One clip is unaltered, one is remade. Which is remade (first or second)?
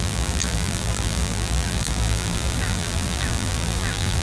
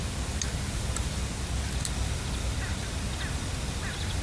first